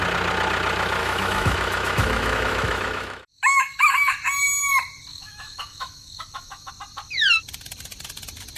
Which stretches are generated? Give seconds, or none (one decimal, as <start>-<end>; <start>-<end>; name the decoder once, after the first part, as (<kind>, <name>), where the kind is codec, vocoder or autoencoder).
1.0-4.1 (autoencoder, DAC-VAE); 5.1-6.7